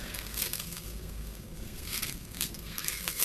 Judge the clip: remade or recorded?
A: remade